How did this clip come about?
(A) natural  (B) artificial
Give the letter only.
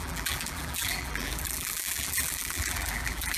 B